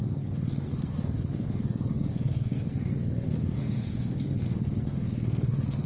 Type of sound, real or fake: fake